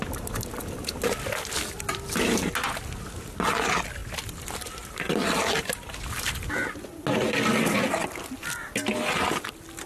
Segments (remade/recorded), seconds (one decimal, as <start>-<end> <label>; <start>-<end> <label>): 0.0-4.0 recorded; 4.0-6.8 remade; 6.8-9.9 recorded